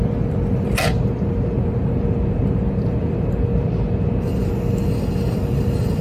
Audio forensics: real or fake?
real